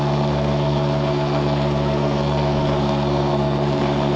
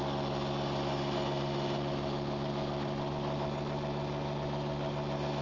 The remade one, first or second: first